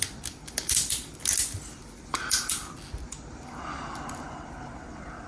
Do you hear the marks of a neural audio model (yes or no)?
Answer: no